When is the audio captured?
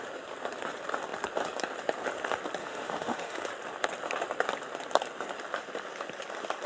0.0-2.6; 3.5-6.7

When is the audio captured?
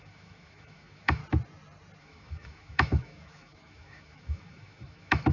1.2-2.0